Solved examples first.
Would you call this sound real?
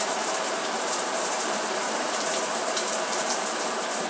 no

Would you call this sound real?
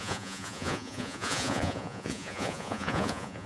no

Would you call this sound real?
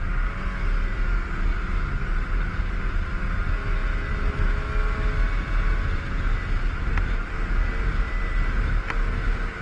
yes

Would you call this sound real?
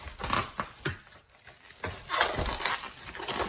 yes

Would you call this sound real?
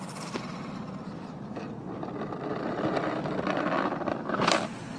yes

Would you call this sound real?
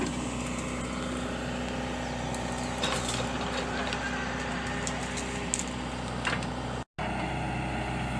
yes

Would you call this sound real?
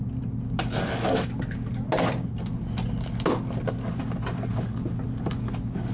yes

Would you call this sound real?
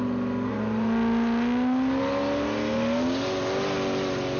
yes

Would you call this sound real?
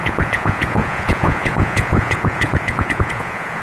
no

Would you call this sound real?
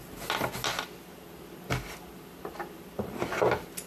yes